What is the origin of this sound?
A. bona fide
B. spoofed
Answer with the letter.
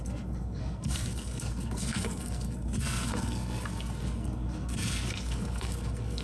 B